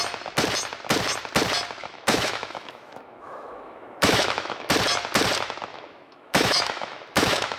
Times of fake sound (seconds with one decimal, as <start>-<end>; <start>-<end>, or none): 1.8-4.7; 5.7-7.6